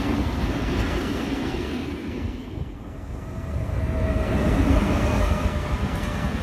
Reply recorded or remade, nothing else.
remade